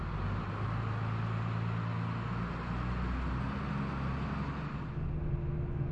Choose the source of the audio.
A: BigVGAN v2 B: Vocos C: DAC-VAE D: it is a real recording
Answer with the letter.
D